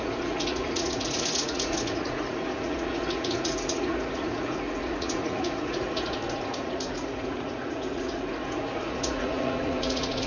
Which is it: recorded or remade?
remade